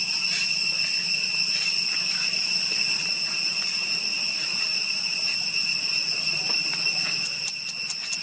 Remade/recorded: recorded